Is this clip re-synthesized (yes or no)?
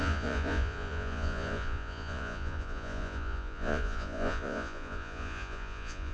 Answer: yes